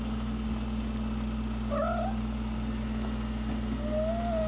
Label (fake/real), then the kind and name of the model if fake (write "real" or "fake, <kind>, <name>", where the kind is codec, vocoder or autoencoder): real